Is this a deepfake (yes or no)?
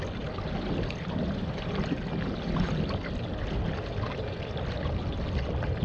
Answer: no